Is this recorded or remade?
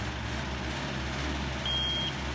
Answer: recorded